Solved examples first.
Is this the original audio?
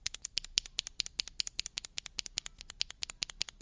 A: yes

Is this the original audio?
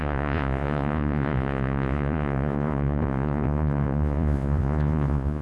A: no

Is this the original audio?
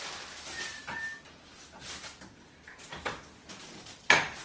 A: yes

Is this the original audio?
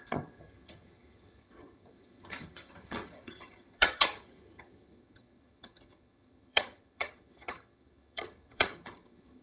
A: no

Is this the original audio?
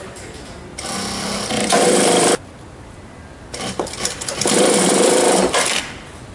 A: no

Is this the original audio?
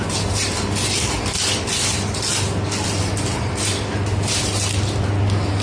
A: yes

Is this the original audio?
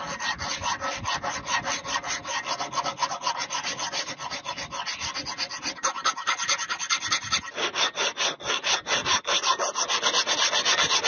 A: yes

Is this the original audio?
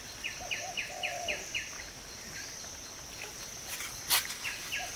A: yes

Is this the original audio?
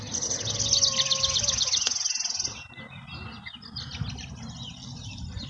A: yes